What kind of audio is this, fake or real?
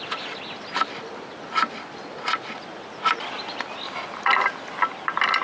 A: real